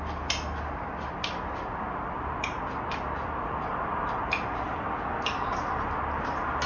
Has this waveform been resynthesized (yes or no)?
no